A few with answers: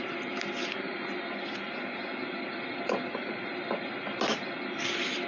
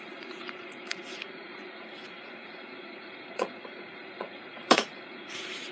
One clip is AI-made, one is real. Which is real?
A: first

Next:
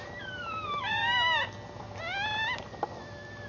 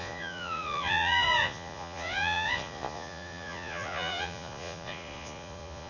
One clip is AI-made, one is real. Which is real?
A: first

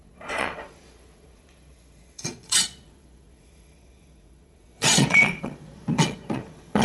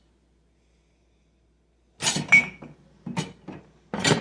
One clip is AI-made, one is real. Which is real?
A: second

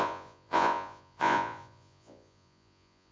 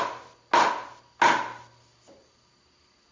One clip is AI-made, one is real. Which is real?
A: second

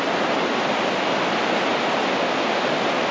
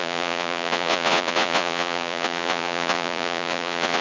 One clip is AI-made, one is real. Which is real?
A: first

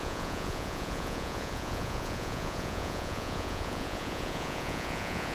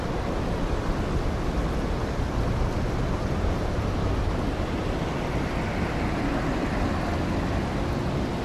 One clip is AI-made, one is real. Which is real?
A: second